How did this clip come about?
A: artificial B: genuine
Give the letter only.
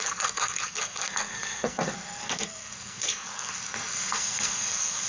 A